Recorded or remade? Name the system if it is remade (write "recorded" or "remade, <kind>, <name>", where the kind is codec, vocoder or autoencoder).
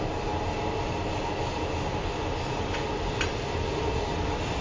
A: recorded